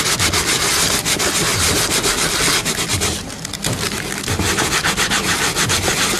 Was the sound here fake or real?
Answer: real